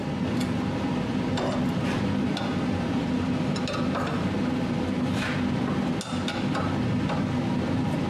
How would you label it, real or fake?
real